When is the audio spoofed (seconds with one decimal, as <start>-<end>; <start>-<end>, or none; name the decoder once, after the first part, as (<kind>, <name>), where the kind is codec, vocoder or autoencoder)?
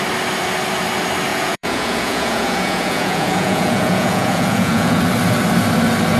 1.3-5.0 (vocoder, Vocos)